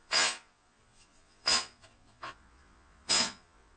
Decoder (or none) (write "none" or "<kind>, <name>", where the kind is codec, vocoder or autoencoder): vocoder, Vocos